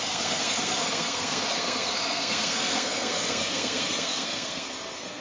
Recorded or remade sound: remade